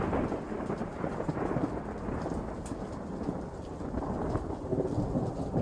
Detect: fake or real real